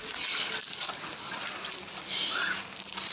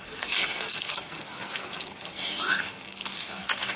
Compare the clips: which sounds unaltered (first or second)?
first